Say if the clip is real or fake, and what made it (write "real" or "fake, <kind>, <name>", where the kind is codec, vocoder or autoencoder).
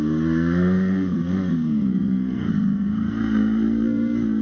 fake, codec, SNAC